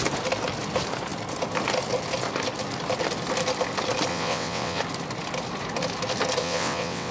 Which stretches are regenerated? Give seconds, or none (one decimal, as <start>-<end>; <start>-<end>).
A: 4.1-4.8; 6.4-7.1